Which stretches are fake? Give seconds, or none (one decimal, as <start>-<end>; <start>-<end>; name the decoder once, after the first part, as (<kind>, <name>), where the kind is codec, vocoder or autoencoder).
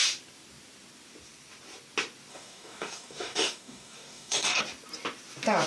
2.3-4.6 (codec, DAC)